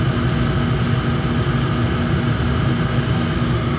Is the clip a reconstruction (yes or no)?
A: no